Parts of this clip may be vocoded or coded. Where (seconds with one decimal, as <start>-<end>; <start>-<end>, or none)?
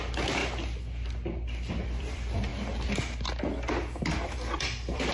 0.0-0.4; 1.7-2.5; 4.0-5.1